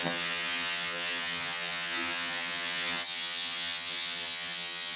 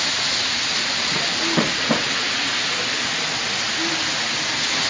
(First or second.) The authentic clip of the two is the second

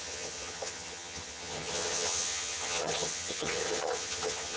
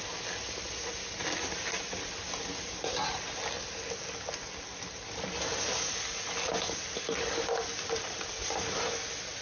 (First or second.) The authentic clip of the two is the second